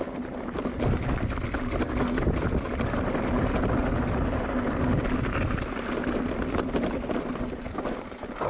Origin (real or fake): real